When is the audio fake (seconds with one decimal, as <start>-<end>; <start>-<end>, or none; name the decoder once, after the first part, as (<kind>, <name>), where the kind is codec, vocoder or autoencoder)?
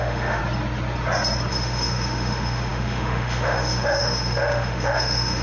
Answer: 0.0-0.4 (autoencoder, DAC-VAE); 1.5-5.4